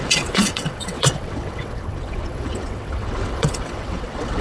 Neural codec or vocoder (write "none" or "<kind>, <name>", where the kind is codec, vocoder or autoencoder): vocoder, WaveNeXt